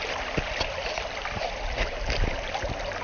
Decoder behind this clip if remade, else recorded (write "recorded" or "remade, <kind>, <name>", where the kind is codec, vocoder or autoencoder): recorded